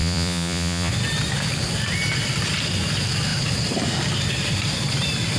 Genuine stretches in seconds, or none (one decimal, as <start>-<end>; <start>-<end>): 0.9-5.4